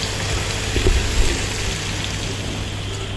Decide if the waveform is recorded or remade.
recorded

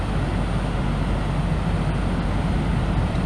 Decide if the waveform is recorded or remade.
recorded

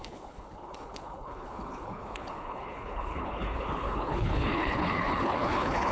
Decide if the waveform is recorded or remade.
remade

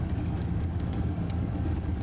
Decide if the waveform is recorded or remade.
remade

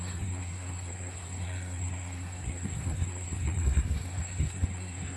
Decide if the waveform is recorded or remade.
remade